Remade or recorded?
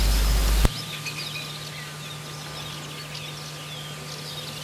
recorded